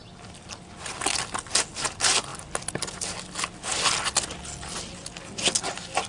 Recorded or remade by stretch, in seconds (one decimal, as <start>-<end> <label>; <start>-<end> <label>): 0.0-6.1 recorded